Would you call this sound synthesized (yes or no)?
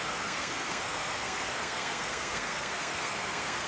yes